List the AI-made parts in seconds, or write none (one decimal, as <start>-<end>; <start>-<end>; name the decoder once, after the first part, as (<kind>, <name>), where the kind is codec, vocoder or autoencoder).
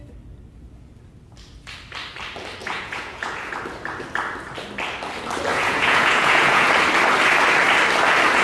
2.6-3.5 (vocoder, Vocos); 5.5-6.7